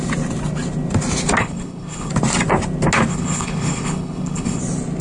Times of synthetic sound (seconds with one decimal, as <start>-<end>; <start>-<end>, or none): 1.4-2.1; 3.1-4.6